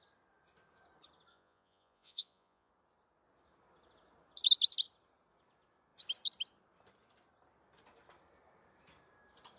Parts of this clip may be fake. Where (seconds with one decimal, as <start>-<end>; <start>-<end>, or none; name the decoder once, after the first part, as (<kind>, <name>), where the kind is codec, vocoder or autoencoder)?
1.3-2.7 (vocoder, Vocos)

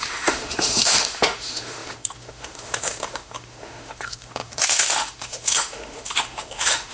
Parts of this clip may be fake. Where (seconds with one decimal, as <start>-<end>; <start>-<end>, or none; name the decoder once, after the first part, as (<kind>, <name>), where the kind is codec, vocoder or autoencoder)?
0.0-6.9 (autoencoder, DAC-VAE)

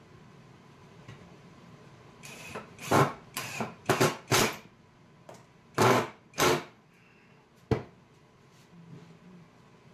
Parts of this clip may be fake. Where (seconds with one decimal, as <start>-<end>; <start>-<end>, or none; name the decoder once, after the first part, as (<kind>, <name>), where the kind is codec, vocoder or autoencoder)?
0.8-4.0 (vocoder, BigVGAN v2)

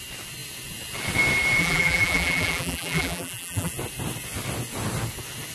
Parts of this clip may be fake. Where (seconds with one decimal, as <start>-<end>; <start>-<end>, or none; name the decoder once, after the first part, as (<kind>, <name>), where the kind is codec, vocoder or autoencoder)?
1.6-3.7 (vocoder, BigVGAN v2)

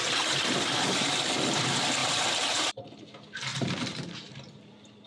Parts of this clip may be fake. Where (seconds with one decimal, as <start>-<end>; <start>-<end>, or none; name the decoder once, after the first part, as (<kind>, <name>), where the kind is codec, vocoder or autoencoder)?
2.0-2.7 (vocoder, BigVGAN v2); 3.5-5.1

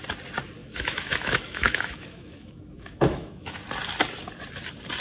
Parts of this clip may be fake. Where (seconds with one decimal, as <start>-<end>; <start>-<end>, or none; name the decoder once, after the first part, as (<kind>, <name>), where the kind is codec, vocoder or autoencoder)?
0.6-3.6 (autoencoder, DAC-VAE)

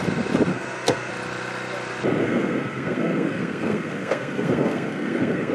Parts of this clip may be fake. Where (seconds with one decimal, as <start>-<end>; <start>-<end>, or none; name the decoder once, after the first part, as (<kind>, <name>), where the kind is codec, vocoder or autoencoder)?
0.5-1.1 (codec, SNAC); 2.2-5.5